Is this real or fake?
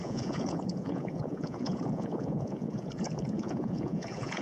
fake